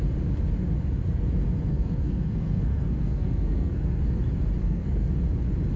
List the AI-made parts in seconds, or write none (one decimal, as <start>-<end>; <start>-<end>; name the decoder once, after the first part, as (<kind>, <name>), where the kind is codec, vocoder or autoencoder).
1.7-4.0 (codec, SNAC); 4.6-5.1